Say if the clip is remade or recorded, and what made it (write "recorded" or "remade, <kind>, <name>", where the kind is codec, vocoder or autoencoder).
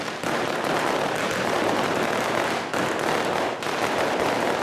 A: recorded